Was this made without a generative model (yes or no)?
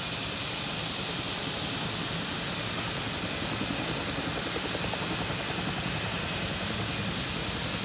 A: yes